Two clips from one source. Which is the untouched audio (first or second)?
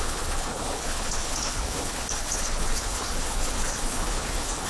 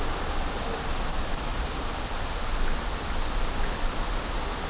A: second